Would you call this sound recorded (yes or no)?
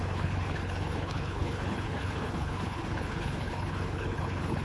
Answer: no